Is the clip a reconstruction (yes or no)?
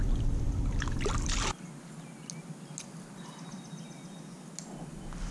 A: no